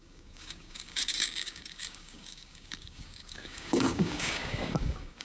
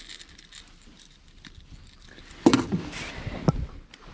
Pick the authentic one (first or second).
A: second